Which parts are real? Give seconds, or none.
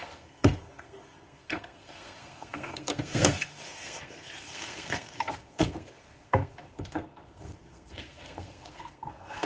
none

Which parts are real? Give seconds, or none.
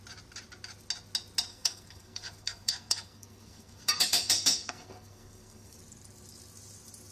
0.0-1.5; 5.8-7.1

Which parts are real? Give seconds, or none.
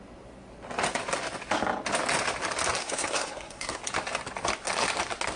0.0-2.8; 3.8-5.4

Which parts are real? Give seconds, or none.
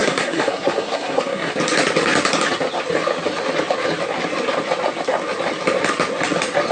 1.5-6.7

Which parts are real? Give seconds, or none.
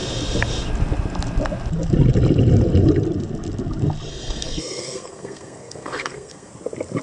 0.0-4.1; 6.5-7.0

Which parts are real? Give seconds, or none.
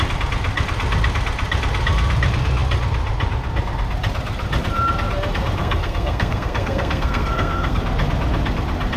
0.0-5.6; 7.8-9.0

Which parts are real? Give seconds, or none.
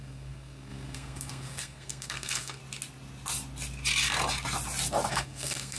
2.6-5.1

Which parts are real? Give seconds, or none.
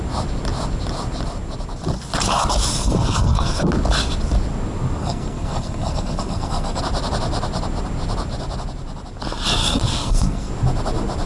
0.0-2.7; 3.6-5.0; 6.8-9.6; 10.5-11.3